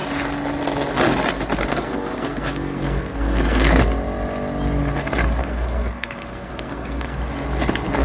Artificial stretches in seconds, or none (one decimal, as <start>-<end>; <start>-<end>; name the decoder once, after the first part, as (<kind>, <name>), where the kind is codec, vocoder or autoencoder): 1.7-3.8 (codec, SNAC); 5.4-7.2